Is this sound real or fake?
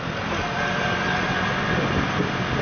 real